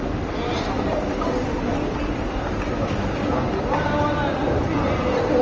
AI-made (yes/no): no